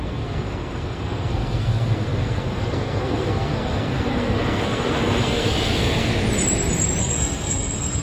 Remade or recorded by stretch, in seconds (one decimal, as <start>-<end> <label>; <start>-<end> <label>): 0.0-6.1 remade; 6.1-7.0 recorded; 7.0-8.0 remade